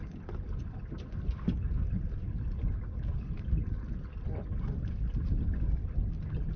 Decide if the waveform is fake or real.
real